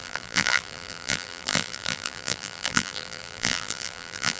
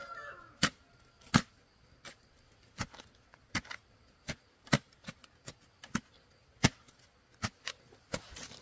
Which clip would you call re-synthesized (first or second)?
first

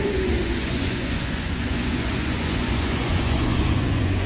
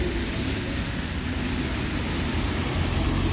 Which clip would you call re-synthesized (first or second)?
first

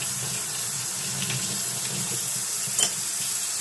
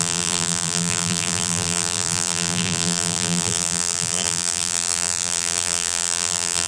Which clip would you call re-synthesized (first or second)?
second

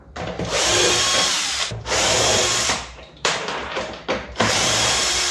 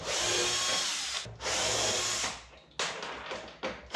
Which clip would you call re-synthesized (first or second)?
first